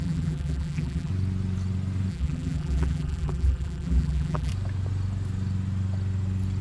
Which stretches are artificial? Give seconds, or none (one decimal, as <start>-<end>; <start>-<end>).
0.0-1.1; 2.1-4.5